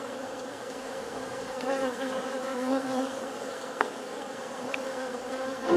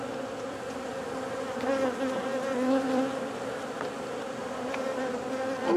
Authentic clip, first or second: second